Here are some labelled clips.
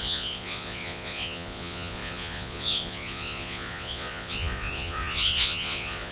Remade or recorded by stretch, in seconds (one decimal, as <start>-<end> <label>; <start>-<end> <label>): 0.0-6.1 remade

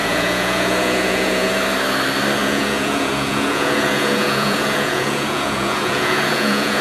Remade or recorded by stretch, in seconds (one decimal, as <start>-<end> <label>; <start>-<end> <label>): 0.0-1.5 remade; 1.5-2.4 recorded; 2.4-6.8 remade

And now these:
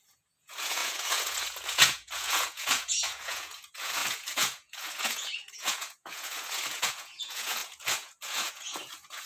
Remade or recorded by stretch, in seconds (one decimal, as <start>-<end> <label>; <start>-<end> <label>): 0.0-9.3 remade